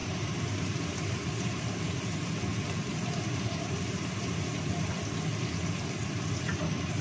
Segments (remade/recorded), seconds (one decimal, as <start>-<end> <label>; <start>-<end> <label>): 0.0-2.4 remade; 2.4-2.9 recorded; 2.9-4.3 remade; 4.3-7.0 recorded